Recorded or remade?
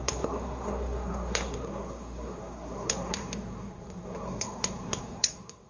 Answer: remade